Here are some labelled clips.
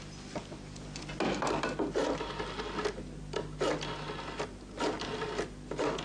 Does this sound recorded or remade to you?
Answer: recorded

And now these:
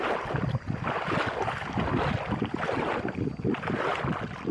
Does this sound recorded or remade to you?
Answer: recorded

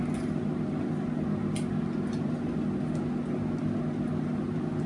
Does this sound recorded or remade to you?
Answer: recorded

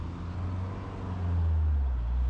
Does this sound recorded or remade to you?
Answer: recorded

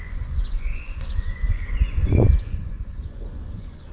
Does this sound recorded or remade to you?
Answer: remade